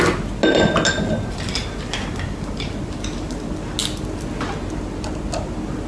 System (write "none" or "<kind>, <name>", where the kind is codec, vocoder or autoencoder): none